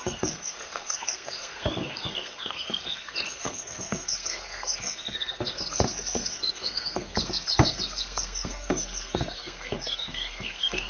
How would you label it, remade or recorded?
remade